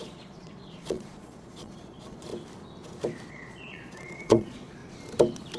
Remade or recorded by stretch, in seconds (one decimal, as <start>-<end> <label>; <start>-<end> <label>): 0.0-2.3 remade; 2.3-3.3 recorded; 3.3-4.8 remade; 4.8-5.6 recorded